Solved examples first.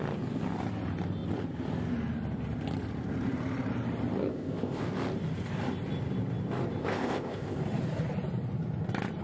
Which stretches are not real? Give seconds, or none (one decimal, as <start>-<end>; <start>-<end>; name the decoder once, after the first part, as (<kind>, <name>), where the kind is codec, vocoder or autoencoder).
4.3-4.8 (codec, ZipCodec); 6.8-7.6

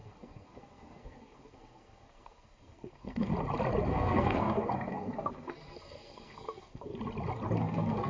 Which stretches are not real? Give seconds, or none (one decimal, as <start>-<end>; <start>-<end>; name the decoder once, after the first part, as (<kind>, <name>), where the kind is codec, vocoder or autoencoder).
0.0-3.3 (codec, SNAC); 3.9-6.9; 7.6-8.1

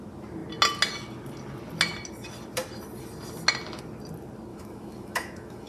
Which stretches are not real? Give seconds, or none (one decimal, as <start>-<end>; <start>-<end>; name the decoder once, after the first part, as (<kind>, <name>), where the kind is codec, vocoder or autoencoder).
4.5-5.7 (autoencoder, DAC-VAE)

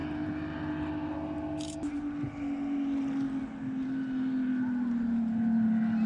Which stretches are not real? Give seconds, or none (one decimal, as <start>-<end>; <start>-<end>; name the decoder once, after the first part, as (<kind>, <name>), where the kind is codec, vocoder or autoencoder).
none